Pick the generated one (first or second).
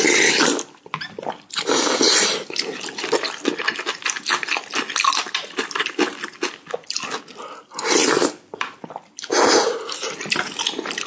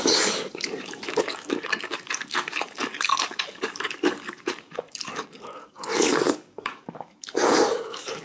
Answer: second